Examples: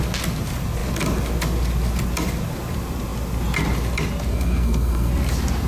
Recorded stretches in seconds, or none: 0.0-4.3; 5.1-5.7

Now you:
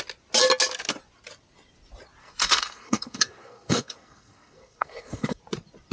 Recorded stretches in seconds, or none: 0.0-2.2; 5.4-5.9

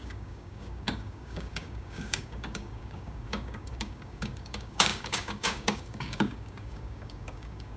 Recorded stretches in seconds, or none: none

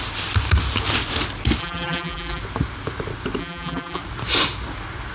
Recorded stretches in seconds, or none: 0.0-1.6; 2.4-3.4; 4.0-5.1